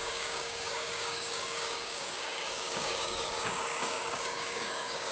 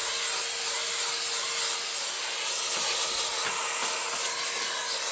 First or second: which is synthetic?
first